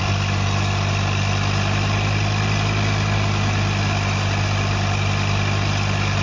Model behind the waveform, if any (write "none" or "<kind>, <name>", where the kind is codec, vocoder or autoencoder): none